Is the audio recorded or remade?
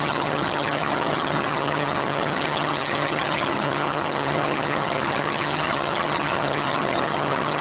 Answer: remade